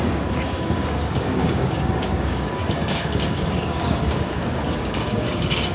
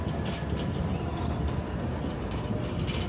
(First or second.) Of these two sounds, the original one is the second